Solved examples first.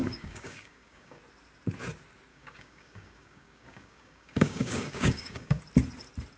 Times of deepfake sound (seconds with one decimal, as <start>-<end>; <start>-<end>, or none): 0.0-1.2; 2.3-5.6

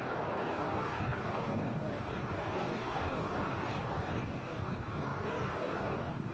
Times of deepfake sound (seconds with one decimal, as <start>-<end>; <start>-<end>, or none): 0.0-6.3

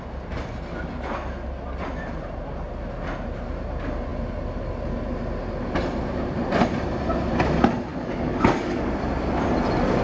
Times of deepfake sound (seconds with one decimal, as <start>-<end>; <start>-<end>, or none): 7.9-8.9

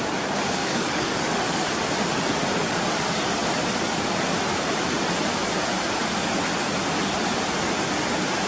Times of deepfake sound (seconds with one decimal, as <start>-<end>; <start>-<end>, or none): 0.6-1.7

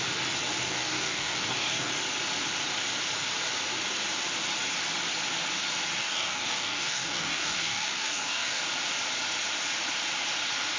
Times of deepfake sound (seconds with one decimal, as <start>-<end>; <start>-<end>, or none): 0.7-1.9; 6.0-8.6

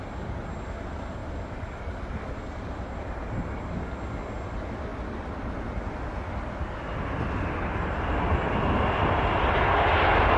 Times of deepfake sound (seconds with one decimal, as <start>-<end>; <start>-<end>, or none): none

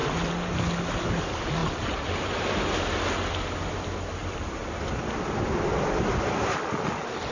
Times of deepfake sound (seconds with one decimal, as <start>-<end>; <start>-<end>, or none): none